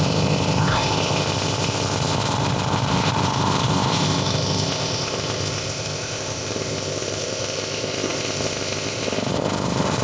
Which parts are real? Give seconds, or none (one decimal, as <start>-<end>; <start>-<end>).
none